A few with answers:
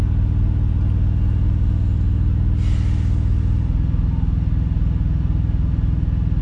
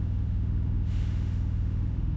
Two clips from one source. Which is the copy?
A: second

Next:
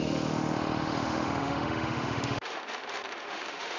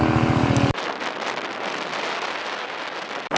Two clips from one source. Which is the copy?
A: first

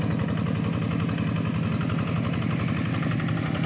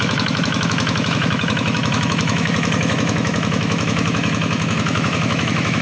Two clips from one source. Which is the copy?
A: second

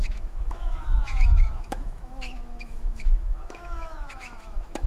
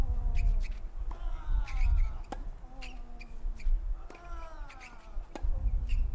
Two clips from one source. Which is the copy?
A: first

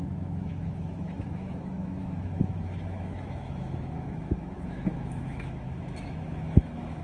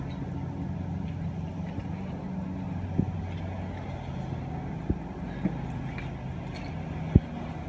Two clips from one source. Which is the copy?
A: first